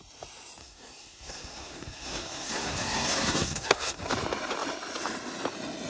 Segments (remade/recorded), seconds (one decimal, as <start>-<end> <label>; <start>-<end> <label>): 0.0-0.6 recorded; 0.6-4.1 remade; 4.1-5.9 recorded